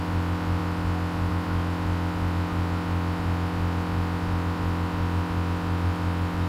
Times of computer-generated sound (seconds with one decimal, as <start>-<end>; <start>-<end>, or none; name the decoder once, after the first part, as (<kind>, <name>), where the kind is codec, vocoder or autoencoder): none